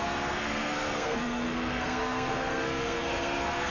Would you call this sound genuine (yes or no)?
no